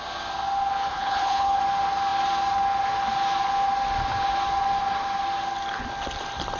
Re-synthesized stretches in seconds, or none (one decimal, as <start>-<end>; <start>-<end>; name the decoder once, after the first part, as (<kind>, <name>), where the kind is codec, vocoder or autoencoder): 0.9-1.6 (codec, HILCodec)